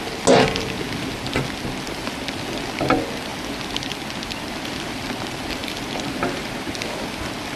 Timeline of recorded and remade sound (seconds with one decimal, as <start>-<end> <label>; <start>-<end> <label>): 0.0-7.6 recorded